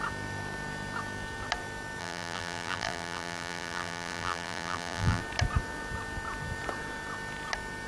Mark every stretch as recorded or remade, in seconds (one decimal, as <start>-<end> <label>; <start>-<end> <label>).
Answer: 0.0-2.0 recorded; 2.0-5.2 remade; 5.2-7.9 recorded